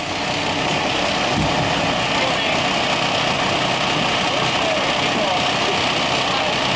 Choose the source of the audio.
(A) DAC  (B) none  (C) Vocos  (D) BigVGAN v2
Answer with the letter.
B